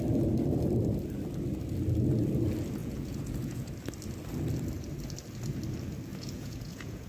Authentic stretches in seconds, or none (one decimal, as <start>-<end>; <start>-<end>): 0.0-2.8; 3.7-6.1

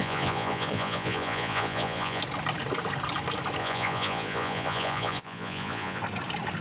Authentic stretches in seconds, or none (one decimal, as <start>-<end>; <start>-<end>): 2.2-3.6; 6.0-6.6

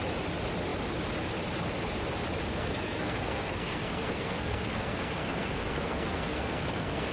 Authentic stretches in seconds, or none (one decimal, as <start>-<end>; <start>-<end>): 0.0-2.5